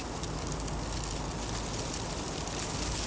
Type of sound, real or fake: real